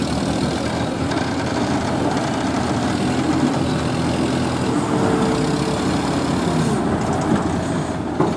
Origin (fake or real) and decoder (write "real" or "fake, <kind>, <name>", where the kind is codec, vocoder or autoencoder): real